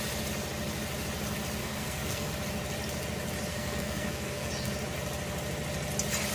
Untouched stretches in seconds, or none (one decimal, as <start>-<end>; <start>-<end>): 0.0-1.6; 2.3-3.5; 4.5-6.3